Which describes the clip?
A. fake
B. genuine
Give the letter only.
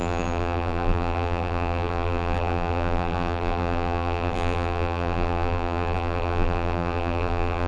A